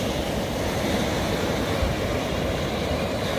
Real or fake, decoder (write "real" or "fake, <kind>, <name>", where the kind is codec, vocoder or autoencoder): real